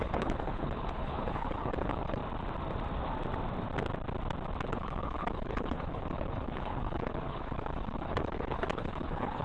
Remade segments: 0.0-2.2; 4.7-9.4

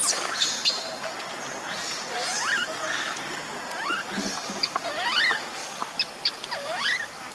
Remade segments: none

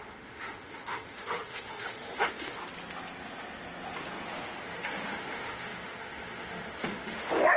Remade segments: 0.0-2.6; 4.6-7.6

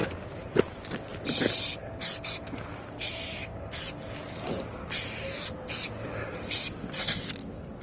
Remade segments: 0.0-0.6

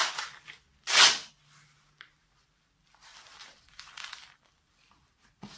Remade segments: 2.2-5.6

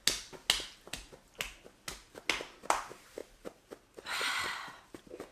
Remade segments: none

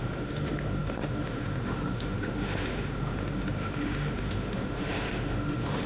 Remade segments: 0.0-5.9